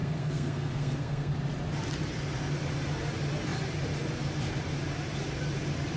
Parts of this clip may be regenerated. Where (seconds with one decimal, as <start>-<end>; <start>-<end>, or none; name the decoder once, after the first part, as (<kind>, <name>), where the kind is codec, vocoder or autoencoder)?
0.0-1.3 (codec, SNAC)